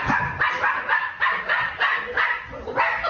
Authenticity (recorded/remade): recorded